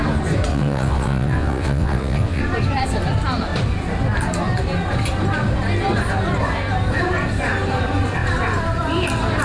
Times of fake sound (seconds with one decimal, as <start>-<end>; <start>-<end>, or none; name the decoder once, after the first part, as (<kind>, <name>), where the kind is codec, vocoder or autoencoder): 0.5-2.4 (vocoder, WaveNeXt)